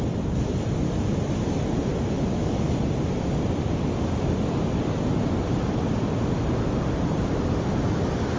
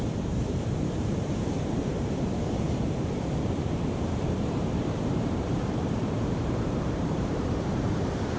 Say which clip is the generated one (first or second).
second